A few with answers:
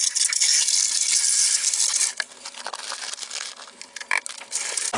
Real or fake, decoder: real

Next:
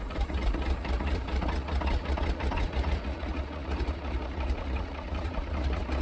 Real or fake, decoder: fake, vocoder, Vocos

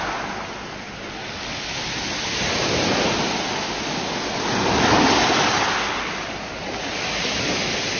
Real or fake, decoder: real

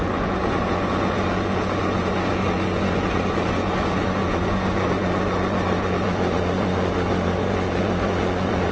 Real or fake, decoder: fake, vocoder, Vocos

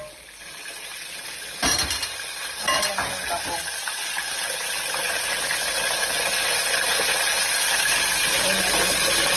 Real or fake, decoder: real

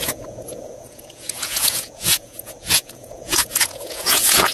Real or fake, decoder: fake, vocoder, Vocos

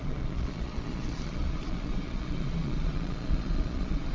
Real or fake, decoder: fake, vocoder, Vocos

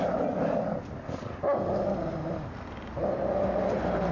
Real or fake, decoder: real